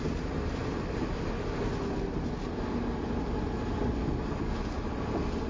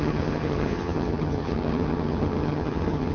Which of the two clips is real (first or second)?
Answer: first